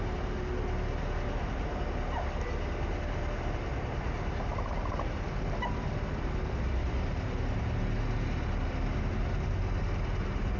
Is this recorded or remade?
recorded